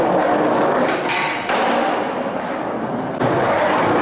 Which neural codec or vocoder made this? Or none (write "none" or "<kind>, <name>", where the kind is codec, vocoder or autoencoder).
none